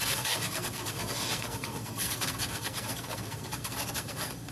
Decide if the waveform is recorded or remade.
remade